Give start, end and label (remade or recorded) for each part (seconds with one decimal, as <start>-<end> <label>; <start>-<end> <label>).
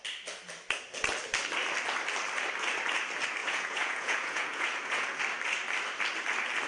0.0-3.4 recorded; 3.4-5.2 remade; 5.2-6.7 recorded